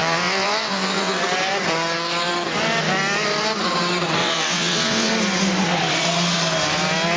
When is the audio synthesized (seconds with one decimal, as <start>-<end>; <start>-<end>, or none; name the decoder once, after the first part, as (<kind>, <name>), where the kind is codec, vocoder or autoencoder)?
0.0-1.2 (vocoder, WaveNeXt); 4.2-5.1